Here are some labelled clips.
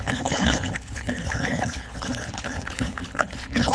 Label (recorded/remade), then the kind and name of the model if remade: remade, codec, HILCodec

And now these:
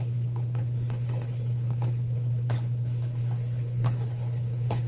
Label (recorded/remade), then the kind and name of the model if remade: remade, codec, HILCodec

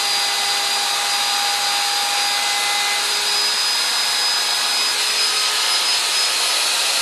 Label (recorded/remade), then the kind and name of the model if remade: recorded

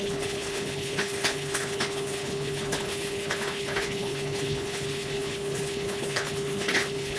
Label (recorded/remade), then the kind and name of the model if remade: remade, codec, HILCodec